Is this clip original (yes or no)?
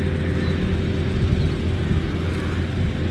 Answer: yes